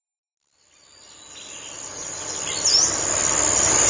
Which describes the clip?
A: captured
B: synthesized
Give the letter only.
A